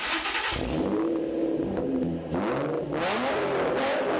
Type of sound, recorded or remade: recorded